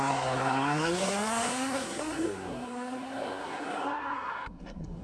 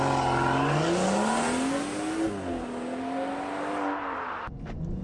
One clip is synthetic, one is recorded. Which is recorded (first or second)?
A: second